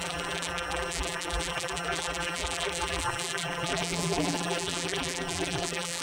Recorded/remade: remade